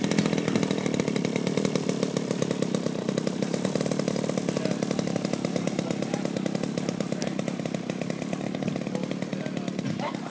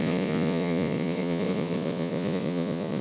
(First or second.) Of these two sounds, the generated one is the second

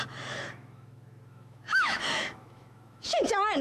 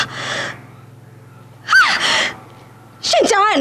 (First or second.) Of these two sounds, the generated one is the first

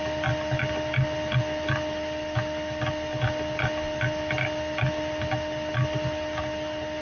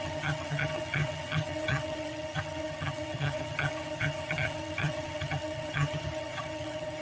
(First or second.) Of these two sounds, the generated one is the second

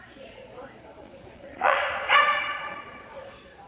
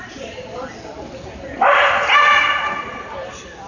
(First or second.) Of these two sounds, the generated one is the first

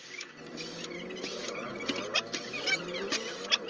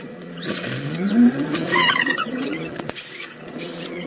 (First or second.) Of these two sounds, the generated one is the second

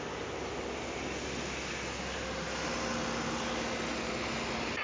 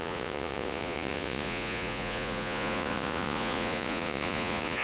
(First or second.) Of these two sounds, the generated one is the second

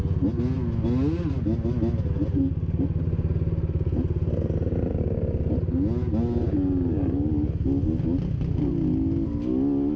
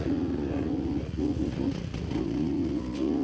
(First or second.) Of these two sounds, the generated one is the second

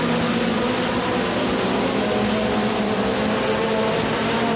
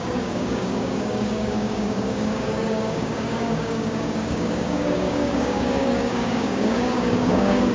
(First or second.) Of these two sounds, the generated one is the second